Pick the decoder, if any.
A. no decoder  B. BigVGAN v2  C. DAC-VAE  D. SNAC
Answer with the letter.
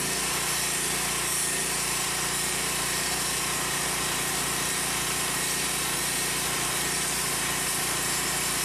B